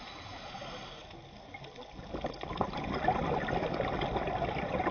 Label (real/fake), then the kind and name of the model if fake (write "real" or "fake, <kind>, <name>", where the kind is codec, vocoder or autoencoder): real